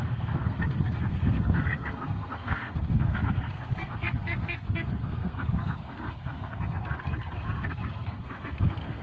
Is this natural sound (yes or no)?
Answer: no